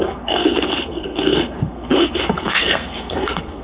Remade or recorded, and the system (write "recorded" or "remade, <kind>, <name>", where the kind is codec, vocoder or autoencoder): remade, codec, SNAC